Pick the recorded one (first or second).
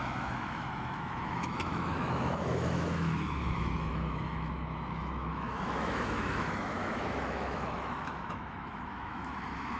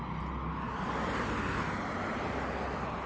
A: second